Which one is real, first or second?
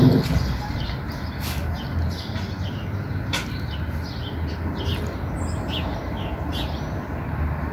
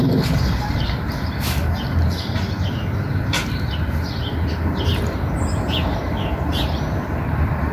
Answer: first